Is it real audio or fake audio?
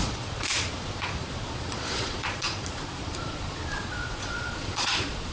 fake